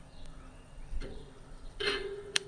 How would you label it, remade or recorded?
remade